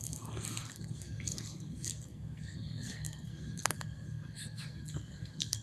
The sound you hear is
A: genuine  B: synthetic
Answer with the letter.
B